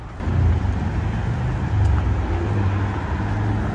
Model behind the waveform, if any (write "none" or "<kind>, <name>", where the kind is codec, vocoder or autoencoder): none